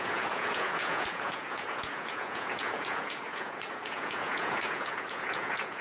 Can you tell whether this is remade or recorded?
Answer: remade